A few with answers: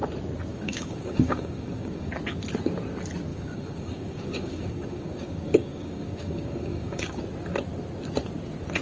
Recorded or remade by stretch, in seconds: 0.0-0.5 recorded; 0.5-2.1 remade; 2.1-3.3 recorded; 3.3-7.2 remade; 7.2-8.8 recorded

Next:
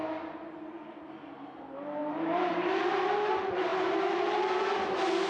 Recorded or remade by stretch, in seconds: 0.0-2.0 recorded; 2.0-3.3 remade; 3.3-3.7 recorded; 3.7-4.6 remade; 4.6-5.3 recorded

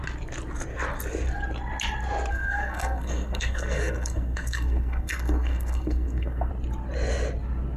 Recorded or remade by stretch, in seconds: 0.0-2.3 recorded; 2.3-6.5 remade; 6.5-7.8 recorded

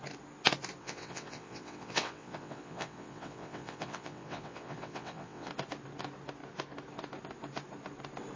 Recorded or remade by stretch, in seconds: 0.0-0.8 recorded; 0.8-5.5 remade; 5.5-8.4 recorded

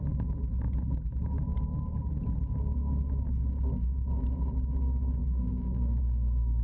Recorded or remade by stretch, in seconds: 0.0-5.2 recorded; 5.2-6.0 remade; 6.0-6.6 recorded

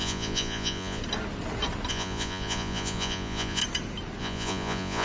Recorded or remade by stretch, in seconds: 0.0-1.0 remade; 1.0-1.9 recorded; 1.9-3.6 remade; 3.6-4.2 recorded; 4.2-5.0 remade

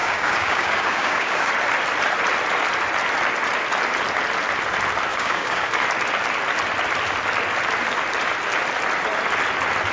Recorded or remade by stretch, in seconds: 0.0-1.5 remade; 1.5-5.1 recorded; 5.1-5.7 remade; 5.7-9.9 recorded